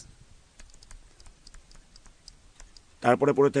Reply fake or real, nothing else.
real